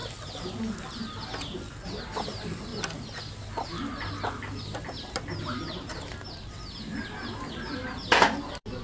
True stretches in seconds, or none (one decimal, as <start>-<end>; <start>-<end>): 0.0-8.8